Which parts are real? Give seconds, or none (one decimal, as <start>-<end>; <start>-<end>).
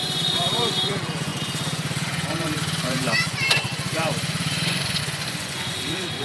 none